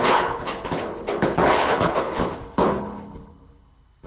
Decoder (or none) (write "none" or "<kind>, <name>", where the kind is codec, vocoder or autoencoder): codec, HILCodec